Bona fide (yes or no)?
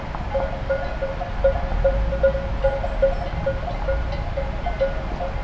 yes